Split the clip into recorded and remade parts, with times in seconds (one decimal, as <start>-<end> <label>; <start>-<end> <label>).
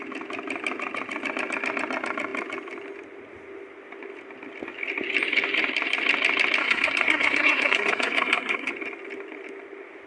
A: 0.0-6.6 recorded; 6.6-8.7 remade; 8.7-10.1 recorded